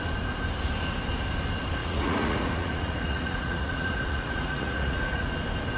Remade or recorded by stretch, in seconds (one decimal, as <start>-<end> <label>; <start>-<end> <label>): 0.0-1.8 recorded; 1.8-5.3 remade; 5.3-5.8 recorded